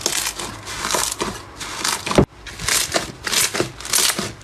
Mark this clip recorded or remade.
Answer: recorded